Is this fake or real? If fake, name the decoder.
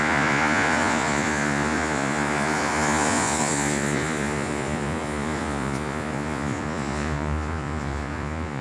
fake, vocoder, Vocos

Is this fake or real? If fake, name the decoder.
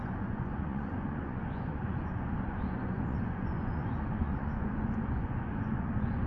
fake, vocoder, Vocos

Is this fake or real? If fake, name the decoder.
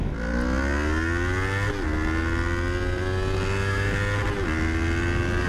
real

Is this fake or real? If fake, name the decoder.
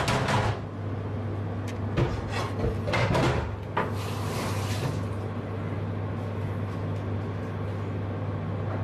real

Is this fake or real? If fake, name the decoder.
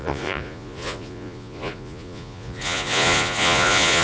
fake, vocoder, Vocos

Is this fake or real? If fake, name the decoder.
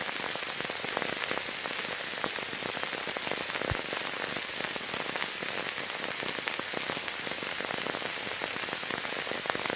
real